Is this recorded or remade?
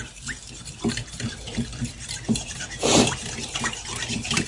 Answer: remade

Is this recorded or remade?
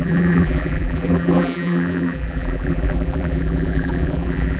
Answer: remade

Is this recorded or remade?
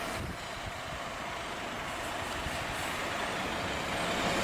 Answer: recorded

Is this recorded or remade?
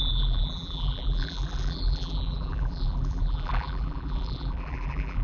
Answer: remade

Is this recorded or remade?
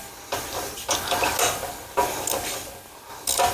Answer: recorded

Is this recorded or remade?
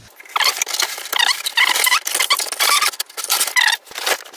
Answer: recorded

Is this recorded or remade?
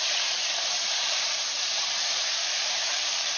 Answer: remade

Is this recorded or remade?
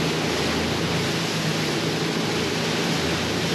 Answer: recorded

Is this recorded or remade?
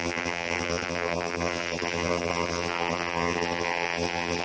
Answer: remade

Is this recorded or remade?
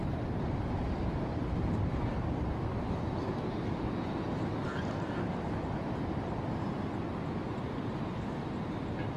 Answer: recorded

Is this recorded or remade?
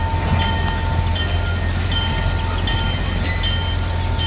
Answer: recorded